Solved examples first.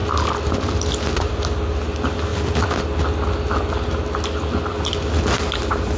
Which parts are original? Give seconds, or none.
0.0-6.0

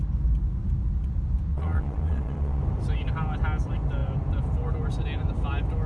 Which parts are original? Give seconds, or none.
0.0-1.5; 2.6-5.9

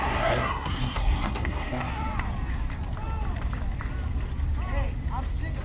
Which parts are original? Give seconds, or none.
1.9-5.6

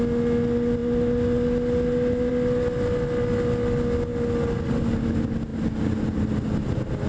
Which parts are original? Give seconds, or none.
0.0-7.1

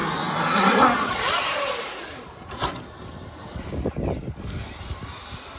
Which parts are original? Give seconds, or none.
0.0-3.4

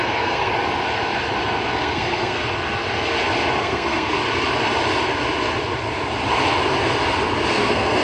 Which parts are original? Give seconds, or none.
0.5-1.7; 2.4-3.6; 4.2-7.5

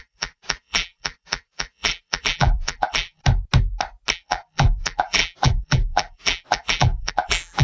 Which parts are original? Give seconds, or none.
3.2-4.1